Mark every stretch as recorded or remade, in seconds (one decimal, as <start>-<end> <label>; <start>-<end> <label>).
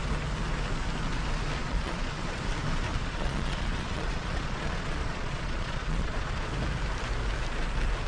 0.0-1.6 recorded; 1.6-2.4 remade; 2.4-2.9 recorded; 2.9-6.5 remade; 6.5-8.1 recorded